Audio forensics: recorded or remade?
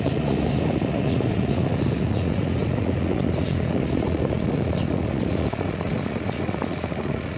remade